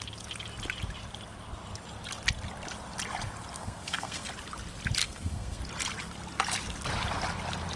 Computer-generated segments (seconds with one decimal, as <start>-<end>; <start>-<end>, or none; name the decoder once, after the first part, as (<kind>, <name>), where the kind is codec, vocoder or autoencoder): 3.6-4.3 (codec, SNAC); 5.0-5.6